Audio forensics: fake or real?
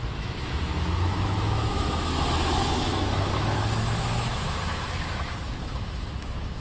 fake